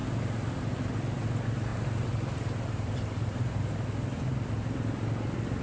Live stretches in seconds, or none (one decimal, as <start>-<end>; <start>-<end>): 0.0-5.6